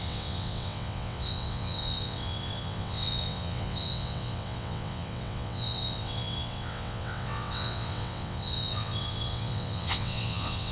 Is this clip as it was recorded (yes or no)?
no